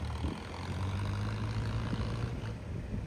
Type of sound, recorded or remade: recorded